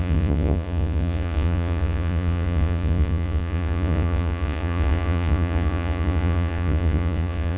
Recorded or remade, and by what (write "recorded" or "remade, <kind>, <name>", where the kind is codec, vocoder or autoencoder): remade, vocoder, Vocos